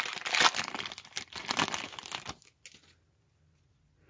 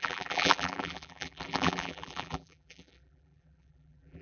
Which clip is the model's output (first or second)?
second